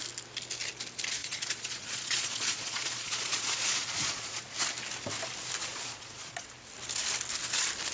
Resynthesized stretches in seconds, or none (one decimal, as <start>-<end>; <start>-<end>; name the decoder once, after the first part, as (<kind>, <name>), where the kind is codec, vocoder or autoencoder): 1.2-4.5 (vocoder, Vocos); 5.6-6.5